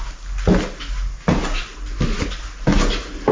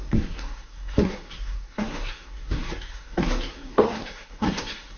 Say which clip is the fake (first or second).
second